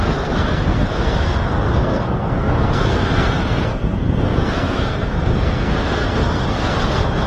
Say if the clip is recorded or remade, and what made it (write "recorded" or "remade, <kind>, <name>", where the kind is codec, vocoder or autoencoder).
remade, codec, SNAC